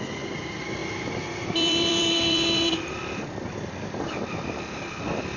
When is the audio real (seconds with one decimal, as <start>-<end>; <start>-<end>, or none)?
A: 0.0-0.8; 4.0-5.4